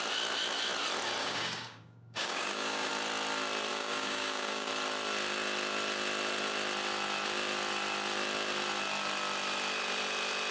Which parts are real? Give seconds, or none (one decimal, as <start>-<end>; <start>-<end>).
0.0-1.2; 2.9-3.7; 4.7-10.5